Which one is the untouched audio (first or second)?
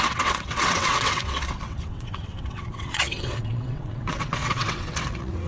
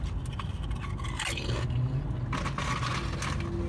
second